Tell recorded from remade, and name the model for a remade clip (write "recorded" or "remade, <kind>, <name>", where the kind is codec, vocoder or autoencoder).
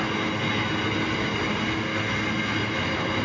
recorded